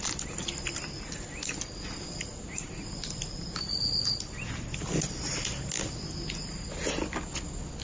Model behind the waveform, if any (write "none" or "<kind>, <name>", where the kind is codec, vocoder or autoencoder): none